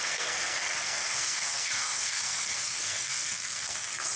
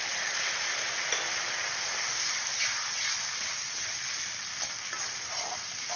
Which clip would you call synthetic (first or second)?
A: first